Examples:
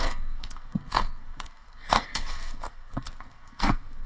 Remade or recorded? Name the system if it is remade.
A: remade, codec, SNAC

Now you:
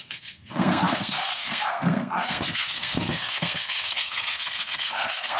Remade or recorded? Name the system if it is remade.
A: remade, codec, SNAC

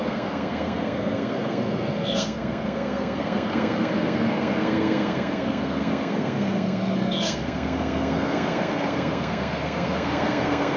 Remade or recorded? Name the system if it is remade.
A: remade, codec, SNAC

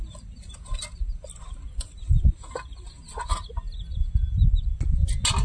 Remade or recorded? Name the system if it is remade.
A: recorded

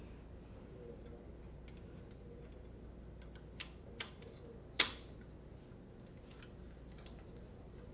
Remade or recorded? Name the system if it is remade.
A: recorded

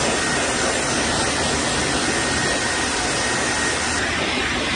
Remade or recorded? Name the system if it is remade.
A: recorded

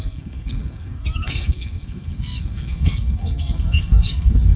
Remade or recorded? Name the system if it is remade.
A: remade, codec, SNAC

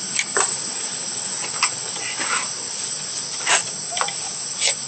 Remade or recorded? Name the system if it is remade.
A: recorded